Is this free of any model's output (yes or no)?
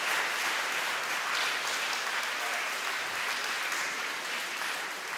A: yes